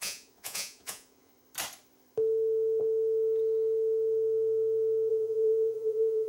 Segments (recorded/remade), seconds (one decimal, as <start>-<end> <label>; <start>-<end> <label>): 0.0-1.3 remade; 1.3-5.1 recorded; 5.1-6.3 remade